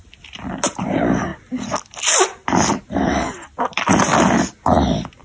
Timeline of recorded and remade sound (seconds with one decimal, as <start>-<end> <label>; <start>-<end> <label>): 0.0-5.2 recorded